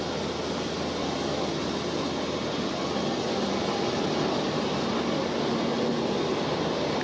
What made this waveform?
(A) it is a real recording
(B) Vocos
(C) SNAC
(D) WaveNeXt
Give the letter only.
A